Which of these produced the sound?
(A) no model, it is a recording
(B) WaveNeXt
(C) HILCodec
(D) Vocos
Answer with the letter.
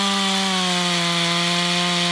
A